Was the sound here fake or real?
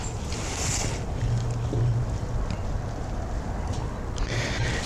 real